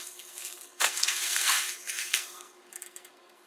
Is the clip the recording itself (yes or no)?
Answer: no